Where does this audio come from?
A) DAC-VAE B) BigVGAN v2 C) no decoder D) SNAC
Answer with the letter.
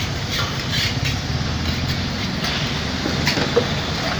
C